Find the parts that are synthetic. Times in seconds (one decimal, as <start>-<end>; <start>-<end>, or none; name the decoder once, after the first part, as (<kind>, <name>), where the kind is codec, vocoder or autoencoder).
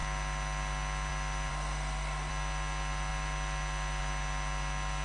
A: 1.5-2.3 (codec, SNAC)